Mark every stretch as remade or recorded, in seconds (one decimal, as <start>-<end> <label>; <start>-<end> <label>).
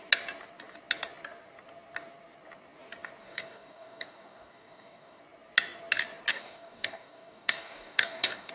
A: 0.0-3.2 recorded; 3.2-5.2 remade; 5.2-6.3 recorded; 6.3-8.5 remade